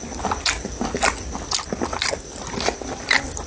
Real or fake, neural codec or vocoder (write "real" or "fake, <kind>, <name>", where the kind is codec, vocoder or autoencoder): real